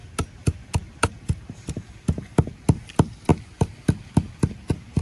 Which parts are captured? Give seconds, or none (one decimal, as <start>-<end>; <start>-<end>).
0.0-5.0

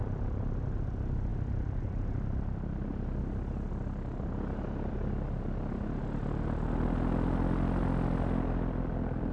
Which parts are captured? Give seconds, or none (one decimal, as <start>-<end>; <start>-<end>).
0.0-9.3

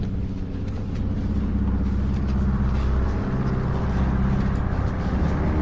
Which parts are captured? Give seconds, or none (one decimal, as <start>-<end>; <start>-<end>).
none